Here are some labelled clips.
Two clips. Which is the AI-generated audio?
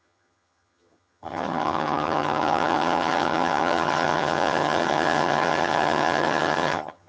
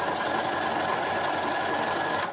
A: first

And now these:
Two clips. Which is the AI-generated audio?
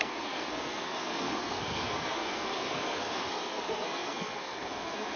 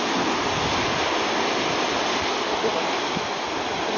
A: first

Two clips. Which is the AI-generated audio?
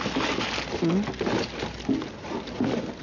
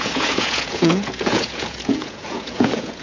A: second